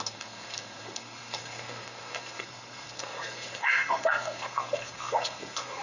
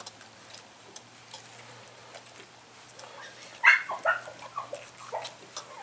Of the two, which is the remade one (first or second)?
first